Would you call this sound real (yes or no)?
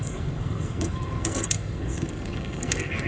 no